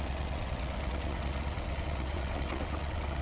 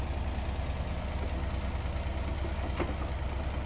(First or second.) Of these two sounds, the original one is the second